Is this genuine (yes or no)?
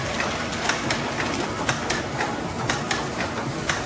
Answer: yes